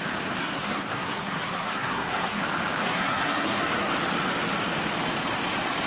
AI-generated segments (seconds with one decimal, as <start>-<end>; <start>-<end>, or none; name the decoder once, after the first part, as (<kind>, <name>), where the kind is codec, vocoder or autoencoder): 0.4-2.4 (codec, SNAC); 2.8-3.9